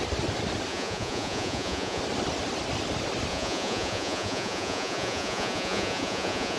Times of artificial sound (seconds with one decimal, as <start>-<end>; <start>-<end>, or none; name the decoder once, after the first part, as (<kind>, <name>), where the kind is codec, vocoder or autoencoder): 0.7-2.0 (vocoder, Vocos); 3.3-6.6